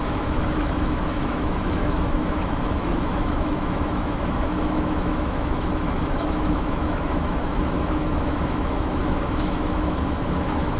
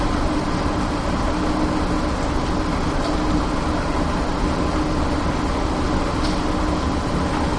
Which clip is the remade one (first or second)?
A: first